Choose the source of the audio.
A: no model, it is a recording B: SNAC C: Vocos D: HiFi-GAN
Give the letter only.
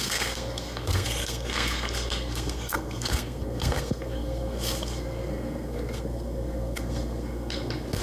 B